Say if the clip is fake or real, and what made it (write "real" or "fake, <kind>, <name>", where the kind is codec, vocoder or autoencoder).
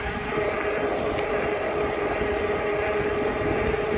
real